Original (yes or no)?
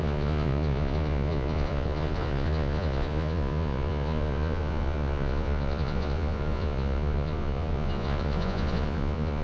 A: no